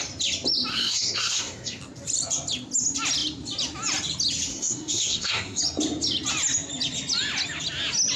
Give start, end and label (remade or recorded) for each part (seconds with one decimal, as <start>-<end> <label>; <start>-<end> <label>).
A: 0.0-0.7 recorded; 0.7-1.8 remade; 1.8-4.5 recorded; 4.5-5.6 remade; 5.6-8.2 recorded